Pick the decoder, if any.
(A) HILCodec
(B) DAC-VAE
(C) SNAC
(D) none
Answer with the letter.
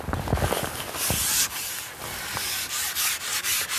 D